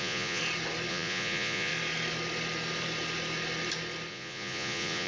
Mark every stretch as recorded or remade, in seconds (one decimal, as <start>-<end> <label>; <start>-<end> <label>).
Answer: 0.0-0.4 remade; 0.4-0.9 recorded; 0.9-1.7 remade; 1.7-4.1 recorded; 4.1-5.1 remade